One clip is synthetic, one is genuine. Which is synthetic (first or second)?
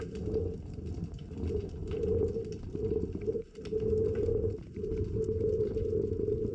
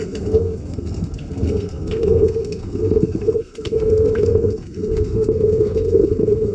second